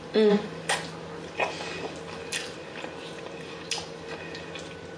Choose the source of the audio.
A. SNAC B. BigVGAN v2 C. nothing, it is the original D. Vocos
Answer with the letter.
C